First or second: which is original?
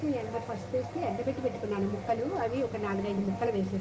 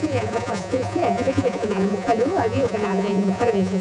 first